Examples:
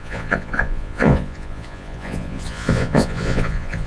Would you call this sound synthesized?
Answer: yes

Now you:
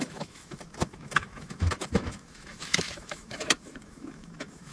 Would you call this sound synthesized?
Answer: yes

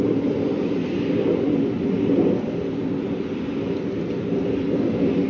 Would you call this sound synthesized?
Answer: no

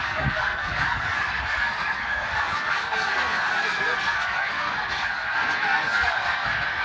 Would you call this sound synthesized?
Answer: yes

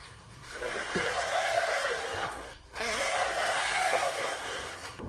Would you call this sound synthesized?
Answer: yes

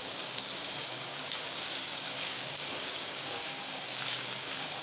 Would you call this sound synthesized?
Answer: yes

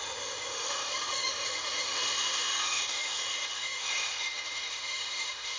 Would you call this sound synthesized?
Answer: yes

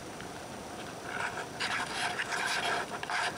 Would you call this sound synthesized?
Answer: no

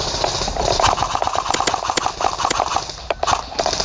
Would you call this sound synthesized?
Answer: no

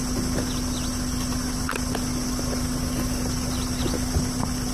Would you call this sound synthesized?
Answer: no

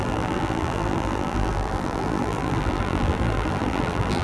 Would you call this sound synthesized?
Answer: yes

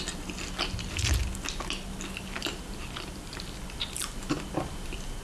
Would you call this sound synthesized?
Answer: no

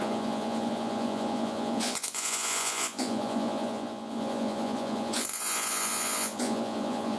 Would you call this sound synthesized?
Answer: yes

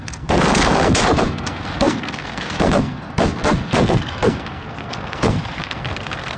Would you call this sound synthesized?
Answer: yes